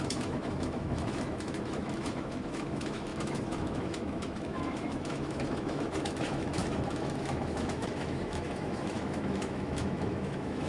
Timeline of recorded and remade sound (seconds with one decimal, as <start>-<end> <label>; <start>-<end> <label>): 0.0-10.7 remade